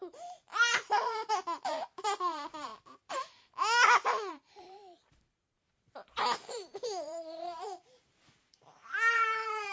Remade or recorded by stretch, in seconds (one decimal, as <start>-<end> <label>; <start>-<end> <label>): 0.0-2.7 remade; 2.7-4.3 recorded; 4.3-9.7 remade